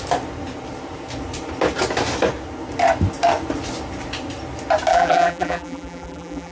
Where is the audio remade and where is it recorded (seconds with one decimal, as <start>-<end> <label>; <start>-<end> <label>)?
0.0-4.9 recorded; 4.9-6.5 remade